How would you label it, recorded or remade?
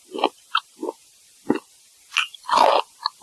recorded